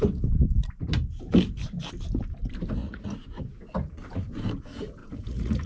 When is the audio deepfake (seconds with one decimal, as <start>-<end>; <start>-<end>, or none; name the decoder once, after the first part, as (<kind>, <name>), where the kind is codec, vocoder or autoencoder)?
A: 2.8-3.4 (vocoder, Vocos); 5.0-5.7